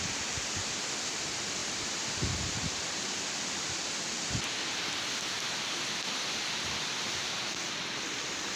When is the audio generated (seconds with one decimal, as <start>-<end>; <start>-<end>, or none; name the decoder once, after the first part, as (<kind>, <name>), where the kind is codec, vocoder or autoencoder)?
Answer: 1.6-2.9 (vocoder, BigVGAN v2)